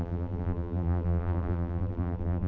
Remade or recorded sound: remade